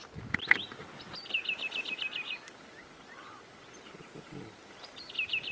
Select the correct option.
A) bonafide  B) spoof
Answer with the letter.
A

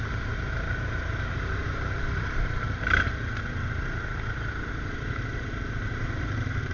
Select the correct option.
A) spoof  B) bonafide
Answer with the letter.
A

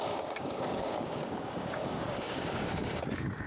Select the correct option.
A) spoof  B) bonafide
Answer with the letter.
A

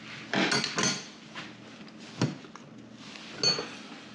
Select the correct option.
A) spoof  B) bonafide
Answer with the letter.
B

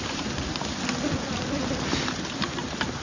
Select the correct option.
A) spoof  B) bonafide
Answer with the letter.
B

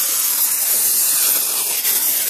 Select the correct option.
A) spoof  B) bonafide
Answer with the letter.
B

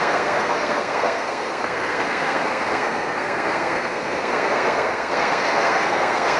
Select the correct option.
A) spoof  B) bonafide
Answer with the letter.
A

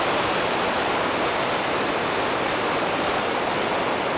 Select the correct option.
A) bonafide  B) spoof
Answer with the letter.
A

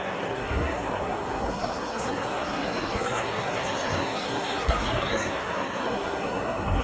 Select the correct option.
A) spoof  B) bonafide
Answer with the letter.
A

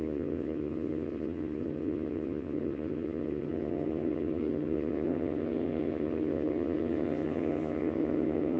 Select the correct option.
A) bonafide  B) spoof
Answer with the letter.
B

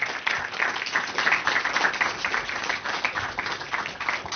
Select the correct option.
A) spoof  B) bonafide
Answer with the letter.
B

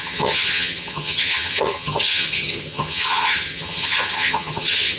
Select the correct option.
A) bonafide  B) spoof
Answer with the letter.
B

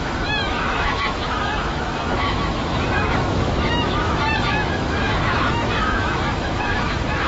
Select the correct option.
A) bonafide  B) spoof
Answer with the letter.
B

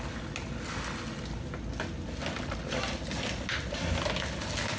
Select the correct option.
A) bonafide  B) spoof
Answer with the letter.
A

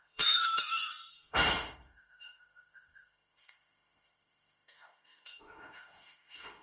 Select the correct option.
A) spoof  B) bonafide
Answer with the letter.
A